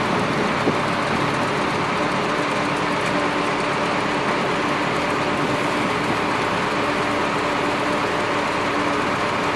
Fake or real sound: real